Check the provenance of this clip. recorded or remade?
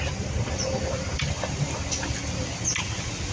recorded